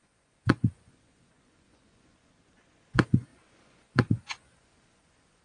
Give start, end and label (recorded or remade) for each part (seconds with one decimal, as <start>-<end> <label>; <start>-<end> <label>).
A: 0.0-5.4 remade